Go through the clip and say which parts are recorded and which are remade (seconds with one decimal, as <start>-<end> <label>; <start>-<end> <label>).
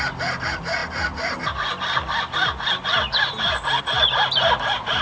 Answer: 0.0-5.0 recorded